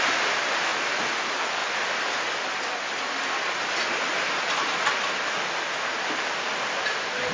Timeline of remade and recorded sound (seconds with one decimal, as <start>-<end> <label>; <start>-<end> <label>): 0.0-0.7 remade; 0.7-1.2 recorded; 1.2-1.6 remade; 1.6-6.0 recorded; 6.0-7.3 remade